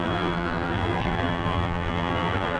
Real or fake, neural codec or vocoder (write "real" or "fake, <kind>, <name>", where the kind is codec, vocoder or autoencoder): fake, vocoder, BigVGAN v2